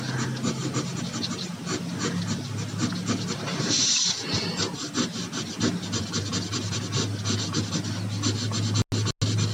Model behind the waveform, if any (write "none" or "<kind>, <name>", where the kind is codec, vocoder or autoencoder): none